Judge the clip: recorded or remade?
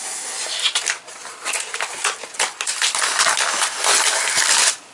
recorded